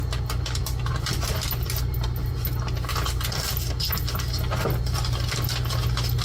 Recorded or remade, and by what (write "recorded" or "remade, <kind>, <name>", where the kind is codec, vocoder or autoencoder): recorded